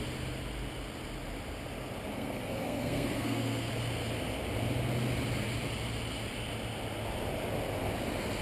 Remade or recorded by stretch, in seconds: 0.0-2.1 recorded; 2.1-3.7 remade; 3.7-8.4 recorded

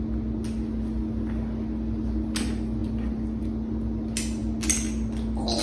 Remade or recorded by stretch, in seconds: 0.0-5.6 recorded